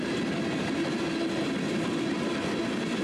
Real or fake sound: real